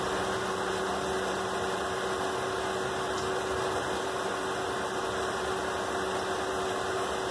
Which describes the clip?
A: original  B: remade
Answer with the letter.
B